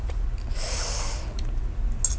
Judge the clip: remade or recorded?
recorded